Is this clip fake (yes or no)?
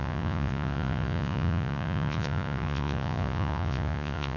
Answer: yes